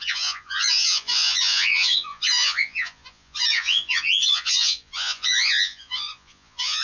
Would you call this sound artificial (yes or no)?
yes